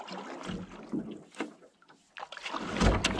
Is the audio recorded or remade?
recorded